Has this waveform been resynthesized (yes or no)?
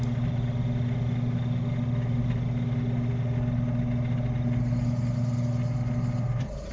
no